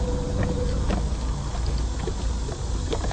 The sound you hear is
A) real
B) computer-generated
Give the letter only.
A